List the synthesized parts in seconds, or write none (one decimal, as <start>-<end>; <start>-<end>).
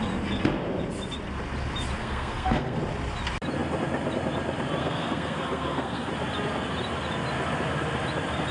2.0-2.8; 4.8-6.1